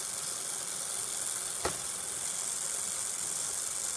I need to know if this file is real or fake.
real